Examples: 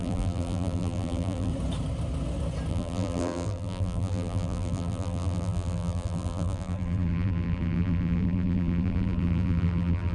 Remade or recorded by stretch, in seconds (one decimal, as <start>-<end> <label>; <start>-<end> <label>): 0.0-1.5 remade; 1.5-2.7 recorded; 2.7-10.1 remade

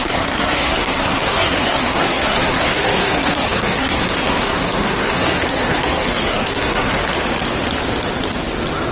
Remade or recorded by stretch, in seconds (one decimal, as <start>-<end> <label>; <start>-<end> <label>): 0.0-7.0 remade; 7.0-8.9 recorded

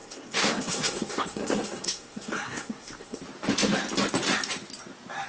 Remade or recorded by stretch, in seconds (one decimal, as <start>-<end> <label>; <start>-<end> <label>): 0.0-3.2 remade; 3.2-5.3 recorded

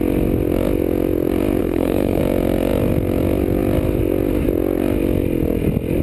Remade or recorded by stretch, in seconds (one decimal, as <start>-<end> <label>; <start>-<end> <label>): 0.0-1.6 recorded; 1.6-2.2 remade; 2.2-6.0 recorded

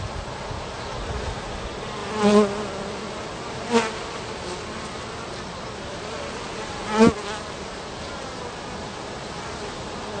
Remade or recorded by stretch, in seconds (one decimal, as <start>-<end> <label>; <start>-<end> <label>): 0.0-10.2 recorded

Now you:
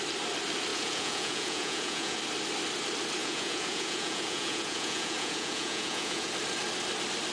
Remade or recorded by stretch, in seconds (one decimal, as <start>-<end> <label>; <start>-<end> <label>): 0.0-0.7 recorded; 0.7-2.2 remade; 2.2-3.2 recorded; 3.2-6.3 remade; 6.3-7.3 recorded

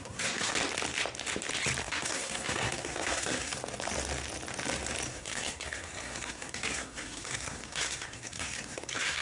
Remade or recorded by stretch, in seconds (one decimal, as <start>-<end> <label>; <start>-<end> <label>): 0.0-0.5 remade; 0.5-1.8 recorded; 1.8-3.6 remade; 3.6-5.1 recorded; 5.1-9.2 remade

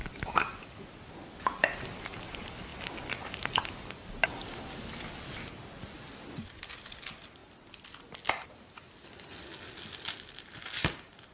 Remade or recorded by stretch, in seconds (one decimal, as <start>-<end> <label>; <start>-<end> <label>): 0.0-11.3 recorded